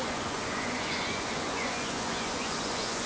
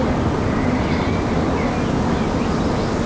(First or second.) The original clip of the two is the second